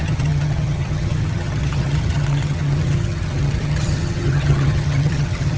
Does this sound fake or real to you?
fake